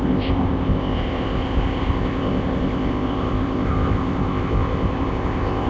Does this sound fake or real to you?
fake